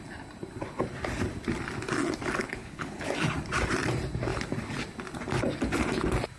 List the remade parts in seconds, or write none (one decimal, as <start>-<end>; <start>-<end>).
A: 2.4-3.1